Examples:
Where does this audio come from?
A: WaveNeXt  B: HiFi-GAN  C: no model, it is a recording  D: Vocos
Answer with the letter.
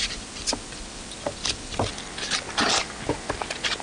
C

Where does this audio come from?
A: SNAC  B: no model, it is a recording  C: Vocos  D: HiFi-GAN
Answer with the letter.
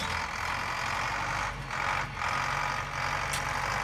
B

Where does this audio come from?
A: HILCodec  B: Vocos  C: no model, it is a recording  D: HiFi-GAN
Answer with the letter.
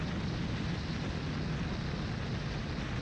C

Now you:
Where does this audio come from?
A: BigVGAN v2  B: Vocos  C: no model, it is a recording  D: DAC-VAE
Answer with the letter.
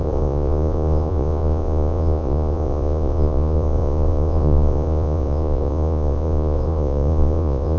B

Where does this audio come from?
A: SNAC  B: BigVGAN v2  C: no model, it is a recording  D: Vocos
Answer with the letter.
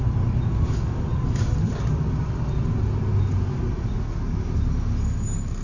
C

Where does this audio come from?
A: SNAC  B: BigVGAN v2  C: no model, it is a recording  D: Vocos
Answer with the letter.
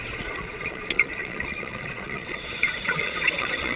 D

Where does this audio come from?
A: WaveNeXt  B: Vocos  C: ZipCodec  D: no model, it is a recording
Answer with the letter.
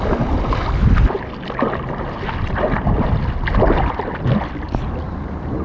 D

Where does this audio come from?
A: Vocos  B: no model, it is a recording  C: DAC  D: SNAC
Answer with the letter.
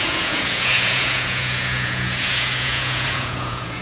A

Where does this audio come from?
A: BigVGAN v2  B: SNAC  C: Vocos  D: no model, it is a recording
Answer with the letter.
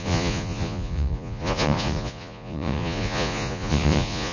C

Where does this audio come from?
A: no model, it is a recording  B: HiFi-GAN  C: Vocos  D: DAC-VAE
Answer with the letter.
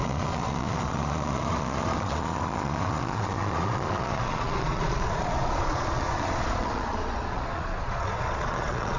C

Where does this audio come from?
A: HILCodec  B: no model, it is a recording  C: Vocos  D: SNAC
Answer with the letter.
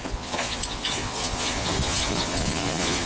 C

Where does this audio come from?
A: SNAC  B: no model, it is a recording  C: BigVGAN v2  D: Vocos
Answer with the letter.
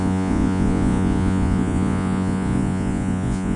D